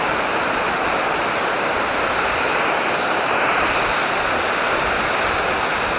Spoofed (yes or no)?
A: no